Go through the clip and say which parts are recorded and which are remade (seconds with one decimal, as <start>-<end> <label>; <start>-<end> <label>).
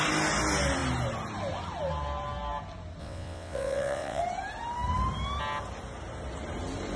0.0-3.0 recorded; 3.0-4.2 remade; 4.2-7.0 recorded